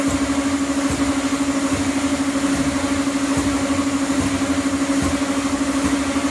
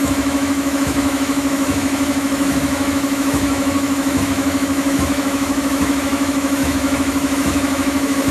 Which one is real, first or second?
first